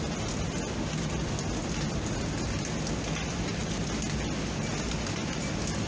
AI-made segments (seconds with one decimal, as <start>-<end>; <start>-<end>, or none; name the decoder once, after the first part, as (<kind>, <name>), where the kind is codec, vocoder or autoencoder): none